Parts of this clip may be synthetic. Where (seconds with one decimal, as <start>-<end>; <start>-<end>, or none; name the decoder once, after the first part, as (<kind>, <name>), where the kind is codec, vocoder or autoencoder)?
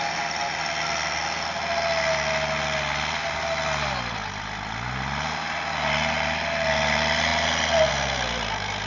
none